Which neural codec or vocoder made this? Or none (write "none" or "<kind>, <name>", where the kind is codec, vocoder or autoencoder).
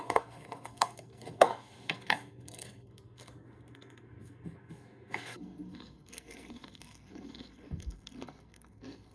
codec, SNAC